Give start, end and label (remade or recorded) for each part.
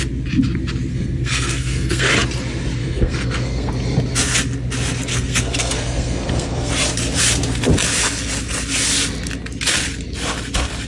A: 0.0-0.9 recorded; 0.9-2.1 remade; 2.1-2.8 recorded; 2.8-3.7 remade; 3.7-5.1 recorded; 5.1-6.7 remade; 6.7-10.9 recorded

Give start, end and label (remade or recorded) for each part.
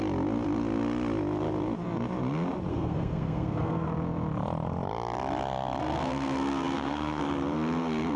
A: 0.0-2.7 recorded; 2.7-3.9 remade; 3.9-5.8 recorded; 5.8-7.2 remade; 7.2-8.2 recorded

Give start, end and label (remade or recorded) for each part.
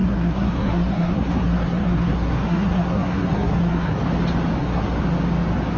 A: 0.0-4.0 remade; 4.0-4.6 recorded; 4.6-5.0 remade; 5.0-5.8 recorded